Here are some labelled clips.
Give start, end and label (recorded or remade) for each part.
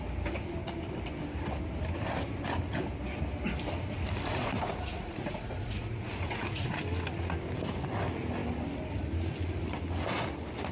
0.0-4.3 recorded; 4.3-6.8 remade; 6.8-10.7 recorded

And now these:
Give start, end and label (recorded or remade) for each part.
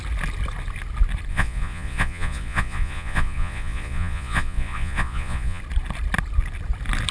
0.0-1.3 recorded; 1.3-5.6 remade; 5.6-7.1 recorded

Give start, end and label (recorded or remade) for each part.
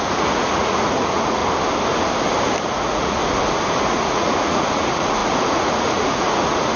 0.0-1.4 remade; 1.4-2.6 recorded; 2.6-3.2 remade; 3.2-3.7 recorded; 3.7-6.8 remade